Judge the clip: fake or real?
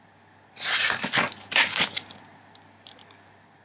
real